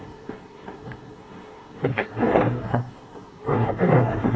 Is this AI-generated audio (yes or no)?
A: yes